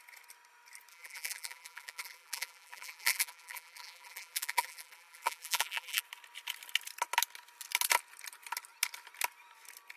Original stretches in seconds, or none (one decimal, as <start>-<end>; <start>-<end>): 0.0-0.9; 6.0-10.0